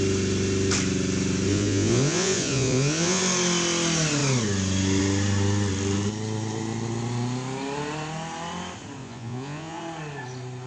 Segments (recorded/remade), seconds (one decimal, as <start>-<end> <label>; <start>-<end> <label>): 0.0-1.5 recorded; 1.5-3.2 remade; 3.2-9.0 recorded; 9.0-9.8 remade; 9.8-10.7 recorded